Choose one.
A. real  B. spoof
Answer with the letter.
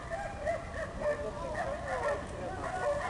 A